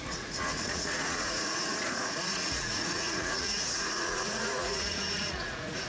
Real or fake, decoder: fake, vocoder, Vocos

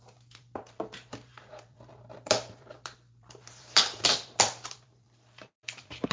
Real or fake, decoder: fake, vocoder, BigVGAN v2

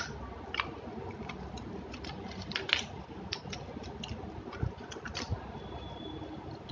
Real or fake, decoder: real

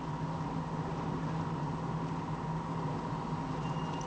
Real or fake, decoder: real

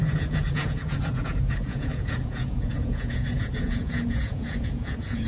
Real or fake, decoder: fake, vocoder, Vocos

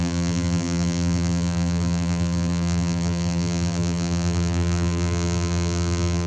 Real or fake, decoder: fake, vocoder, BigVGAN v2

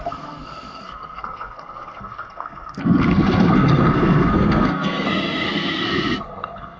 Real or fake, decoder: fake, codec, SNAC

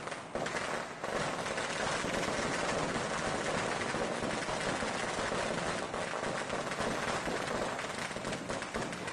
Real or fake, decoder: real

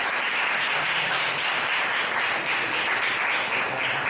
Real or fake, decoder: real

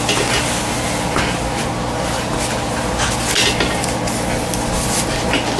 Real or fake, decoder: real